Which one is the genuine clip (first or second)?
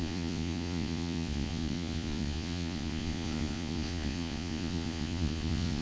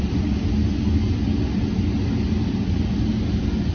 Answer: second